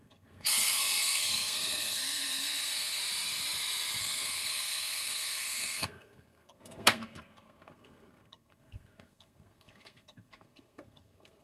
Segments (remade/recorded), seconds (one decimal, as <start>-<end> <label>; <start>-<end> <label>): 0.0-3.0 remade; 3.0-4.0 recorded; 4.0-11.4 remade